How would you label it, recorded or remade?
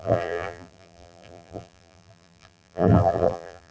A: remade